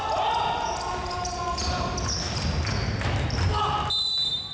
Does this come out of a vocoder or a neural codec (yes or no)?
no